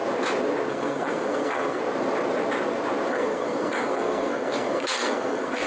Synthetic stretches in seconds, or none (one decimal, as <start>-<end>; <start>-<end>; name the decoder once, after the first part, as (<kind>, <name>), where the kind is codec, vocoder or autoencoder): 0.7-1.8 (codec, SNAC); 3.1-5.7